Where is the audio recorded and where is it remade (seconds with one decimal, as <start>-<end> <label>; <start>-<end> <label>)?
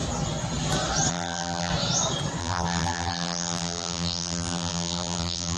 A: 0.0-1.1 recorded; 1.1-1.7 remade; 1.7-2.4 recorded; 2.4-5.6 remade